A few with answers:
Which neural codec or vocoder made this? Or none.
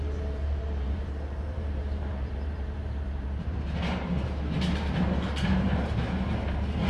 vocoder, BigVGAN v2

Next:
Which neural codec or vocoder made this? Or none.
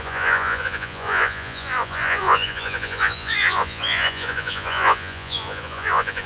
vocoder, Vocos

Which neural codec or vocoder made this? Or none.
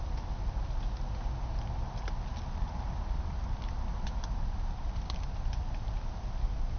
none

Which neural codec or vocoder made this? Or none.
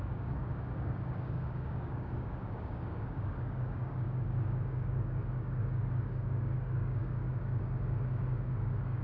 codec, DAC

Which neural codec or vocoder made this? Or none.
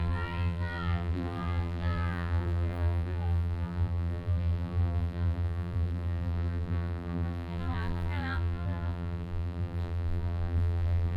vocoder, BigVGAN v2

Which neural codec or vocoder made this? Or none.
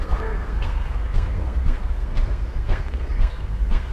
codec, SNAC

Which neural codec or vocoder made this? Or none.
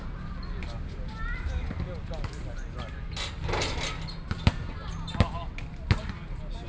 none